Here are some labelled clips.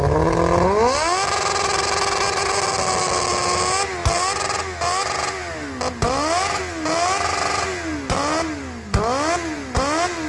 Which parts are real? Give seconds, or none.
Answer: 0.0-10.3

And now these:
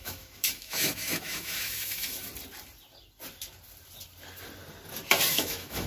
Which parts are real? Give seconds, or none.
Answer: 2.3-5.3